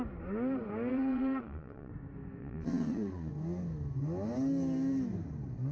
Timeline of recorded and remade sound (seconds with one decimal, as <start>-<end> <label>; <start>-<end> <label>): 0.0-0.9 recorded; 0.9-1.9 remade; 1.9-2.4 recorded; 2.4-3.3 remade; 3.3-5.7 recorded